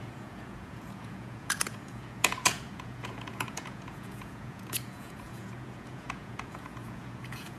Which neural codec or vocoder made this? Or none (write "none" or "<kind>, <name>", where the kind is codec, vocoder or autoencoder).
vocoder, Vocos